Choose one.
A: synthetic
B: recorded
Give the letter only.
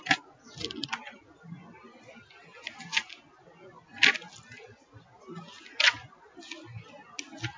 B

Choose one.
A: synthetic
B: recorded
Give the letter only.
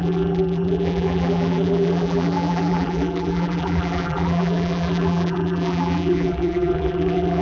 A